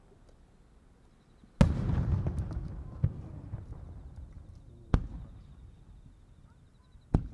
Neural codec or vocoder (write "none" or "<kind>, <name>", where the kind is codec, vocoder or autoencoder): none